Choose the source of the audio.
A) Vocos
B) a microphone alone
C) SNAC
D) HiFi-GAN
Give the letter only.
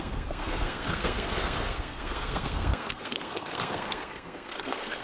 C